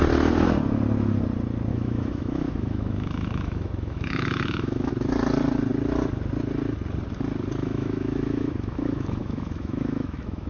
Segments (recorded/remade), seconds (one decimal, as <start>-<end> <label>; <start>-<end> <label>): 0.0-1.7 recorded; 1.7-4.9 remade; 4.9-7.6 recorded; 7.6-10.5 remade